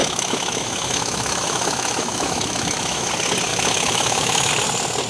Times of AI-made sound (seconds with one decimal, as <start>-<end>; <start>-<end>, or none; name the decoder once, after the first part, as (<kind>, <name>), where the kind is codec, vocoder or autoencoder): 0.0-3.1 (autoencoder, DAC-VAE); 3.5-4.5